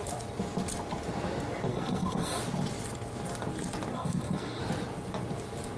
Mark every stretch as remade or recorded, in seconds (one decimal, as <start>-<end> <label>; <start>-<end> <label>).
0.0-1.7 recorded; 1.7-2.4 remade; 2.4-3.9 recorded; 3.9-4.6 remade; 4.6-5.8 recorded